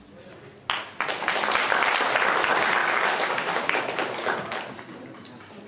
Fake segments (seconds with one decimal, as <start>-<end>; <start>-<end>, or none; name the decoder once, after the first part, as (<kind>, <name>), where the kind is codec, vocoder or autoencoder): 2.8-3.8 (codec, DAC)